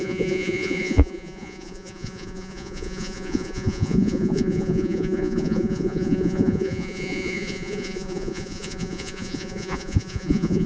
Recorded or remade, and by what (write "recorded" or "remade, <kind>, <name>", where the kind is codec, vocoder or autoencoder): remade, vocoder, Vocos